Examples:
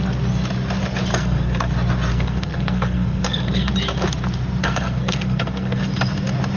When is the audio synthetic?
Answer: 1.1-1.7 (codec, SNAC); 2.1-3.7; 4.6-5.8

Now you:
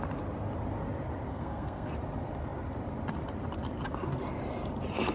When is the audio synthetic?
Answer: 1.3-1.9 (codec, SNAC)

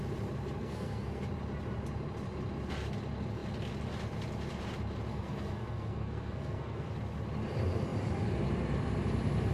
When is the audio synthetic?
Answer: 0.6-1.2 (codec, SNAC); 5.1-6.9